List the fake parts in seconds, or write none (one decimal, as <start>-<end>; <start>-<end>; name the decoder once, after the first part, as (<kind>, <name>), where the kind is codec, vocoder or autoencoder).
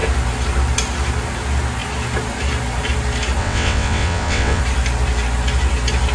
3.4-4.6 (vocoder, WaveNeXt)